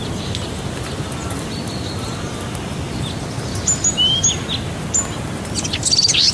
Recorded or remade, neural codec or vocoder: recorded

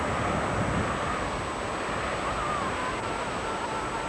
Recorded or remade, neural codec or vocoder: recorded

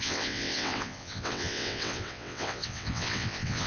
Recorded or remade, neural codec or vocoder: remade, vocoder, WaveNeXt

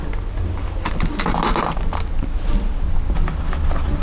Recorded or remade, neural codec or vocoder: recorded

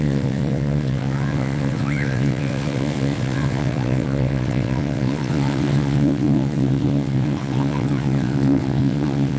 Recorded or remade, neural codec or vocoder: remade, vocoder, WaveNeXt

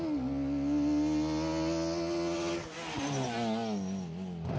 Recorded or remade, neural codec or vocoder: recorded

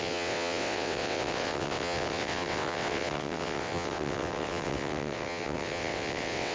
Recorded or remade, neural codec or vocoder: remade, vocoder, WaveNeXt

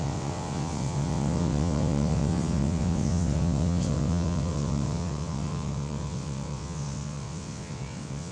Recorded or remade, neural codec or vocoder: remade, vocoder, WaveNeXt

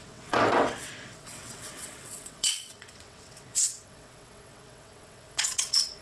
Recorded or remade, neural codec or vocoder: remade, vocoder, WaveNeXt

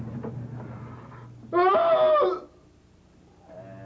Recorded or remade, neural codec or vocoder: recorded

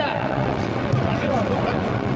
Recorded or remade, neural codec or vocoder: remade, vocoder, WaveNeXt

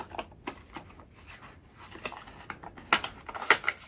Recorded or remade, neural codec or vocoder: recorded